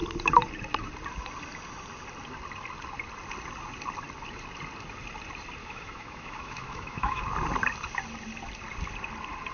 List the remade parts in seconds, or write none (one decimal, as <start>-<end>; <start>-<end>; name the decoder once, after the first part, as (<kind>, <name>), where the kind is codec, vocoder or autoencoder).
5.6-7.2 (autoencoder, DAC-VAE)